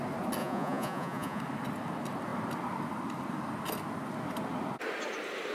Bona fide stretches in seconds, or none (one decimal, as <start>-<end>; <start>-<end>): 0.0-0.4; 1.4-5.5